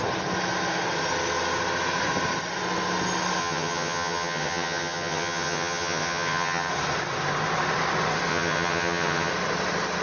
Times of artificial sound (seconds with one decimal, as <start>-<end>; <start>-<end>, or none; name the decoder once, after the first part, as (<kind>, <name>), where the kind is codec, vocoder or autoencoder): 3.4-6.7 (vocoder, HiFi-GAN); 8.3-9.3